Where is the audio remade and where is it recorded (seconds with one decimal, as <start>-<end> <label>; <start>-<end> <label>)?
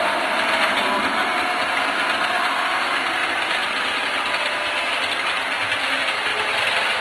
0.0-7.0 recorded